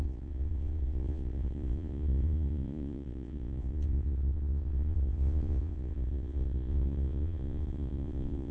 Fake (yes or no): yes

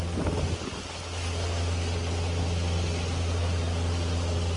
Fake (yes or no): no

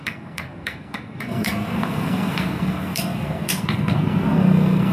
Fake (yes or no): yes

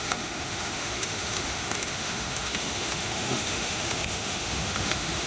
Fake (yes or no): yes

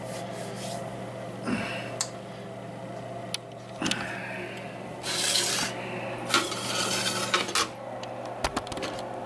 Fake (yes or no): no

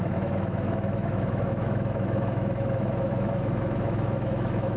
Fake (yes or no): yes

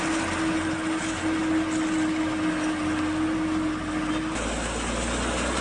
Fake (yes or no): no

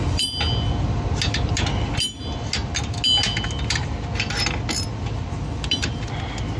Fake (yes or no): no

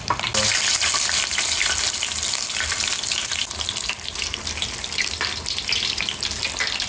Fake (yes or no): no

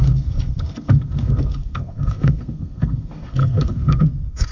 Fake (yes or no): yes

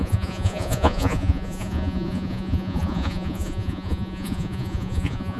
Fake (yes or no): yes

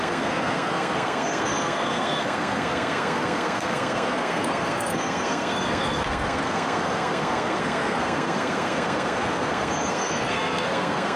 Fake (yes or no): yes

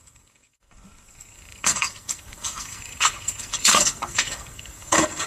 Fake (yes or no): yes